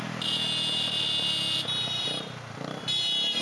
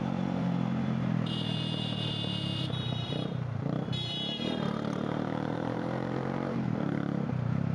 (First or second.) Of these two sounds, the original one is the first